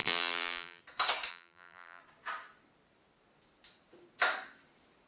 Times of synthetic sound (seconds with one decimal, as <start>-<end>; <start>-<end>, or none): 0.0-0.8; 1.3-2.0